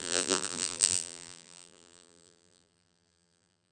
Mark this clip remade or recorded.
remade